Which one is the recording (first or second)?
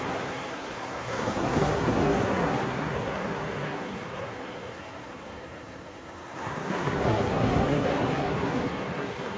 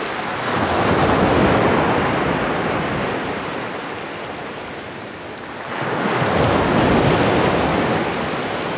second